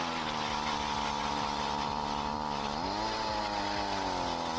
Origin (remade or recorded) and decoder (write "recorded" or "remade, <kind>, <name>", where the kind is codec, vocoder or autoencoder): recorded